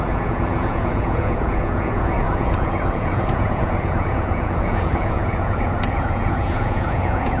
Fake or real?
fake